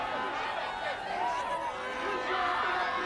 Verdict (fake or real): real